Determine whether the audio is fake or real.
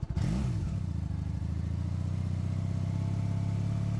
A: real